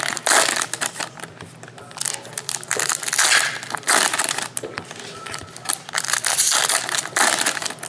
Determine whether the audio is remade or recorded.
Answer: recorded